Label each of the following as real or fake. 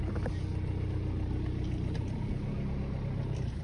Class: real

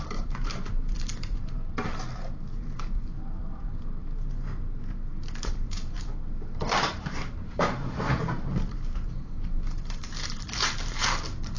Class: fake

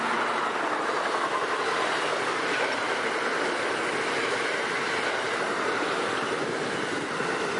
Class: real